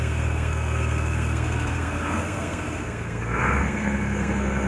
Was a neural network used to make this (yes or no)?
yes